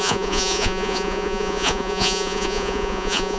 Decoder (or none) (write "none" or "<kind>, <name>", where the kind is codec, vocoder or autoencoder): vocoder, Vocos